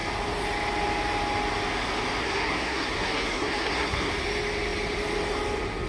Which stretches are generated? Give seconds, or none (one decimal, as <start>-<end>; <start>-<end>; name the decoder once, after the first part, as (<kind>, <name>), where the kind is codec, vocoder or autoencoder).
2.2-4.1 (codec, SNAC)